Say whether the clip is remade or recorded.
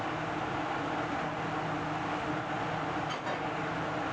recorded